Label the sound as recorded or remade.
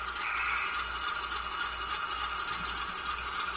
recorded